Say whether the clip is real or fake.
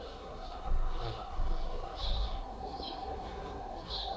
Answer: fake